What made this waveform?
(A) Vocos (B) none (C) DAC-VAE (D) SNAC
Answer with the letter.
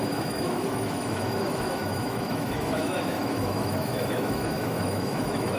C